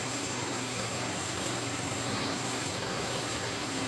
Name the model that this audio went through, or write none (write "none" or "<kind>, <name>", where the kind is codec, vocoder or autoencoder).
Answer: codec, SNAC